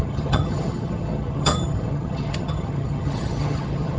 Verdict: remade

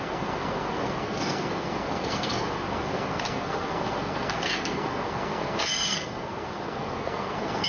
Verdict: remade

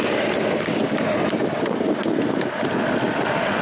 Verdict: recorded